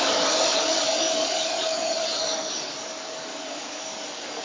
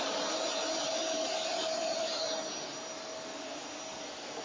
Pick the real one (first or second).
second